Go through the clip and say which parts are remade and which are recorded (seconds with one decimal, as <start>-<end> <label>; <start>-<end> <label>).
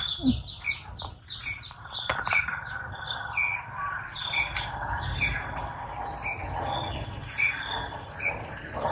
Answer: 0.0-1.4 recorded; 1.4-2.1 remade; 2.1-8.9 recorded